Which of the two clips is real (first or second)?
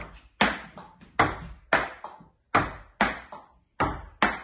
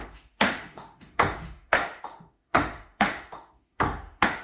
first